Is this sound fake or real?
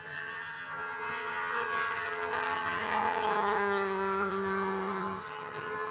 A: fake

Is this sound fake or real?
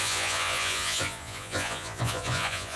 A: fake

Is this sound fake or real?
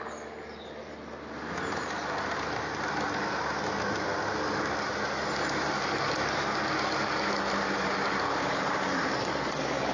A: real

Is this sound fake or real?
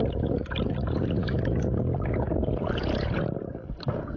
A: real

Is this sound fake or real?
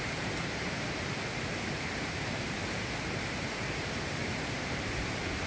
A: fake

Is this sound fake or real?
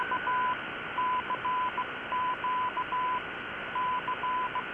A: real